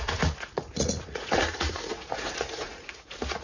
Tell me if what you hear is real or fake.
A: fake